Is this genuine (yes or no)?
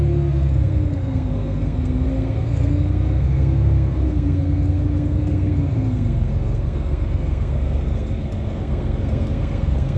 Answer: no